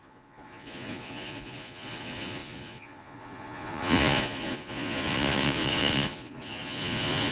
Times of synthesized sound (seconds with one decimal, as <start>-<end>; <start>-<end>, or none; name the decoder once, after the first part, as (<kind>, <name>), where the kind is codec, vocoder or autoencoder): 0.0-7.3 (vocoder, Vocos)